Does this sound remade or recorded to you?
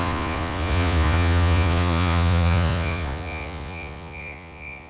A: remade